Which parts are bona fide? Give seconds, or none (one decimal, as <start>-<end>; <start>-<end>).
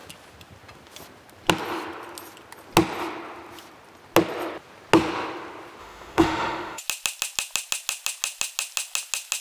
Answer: 0.0-5.8; 6.8-9.4